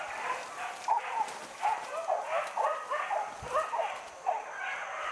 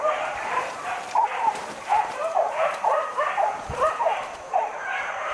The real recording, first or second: first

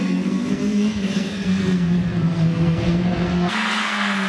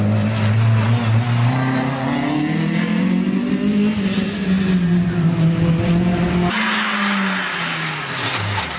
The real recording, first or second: second